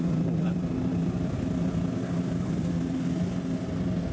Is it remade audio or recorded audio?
recorded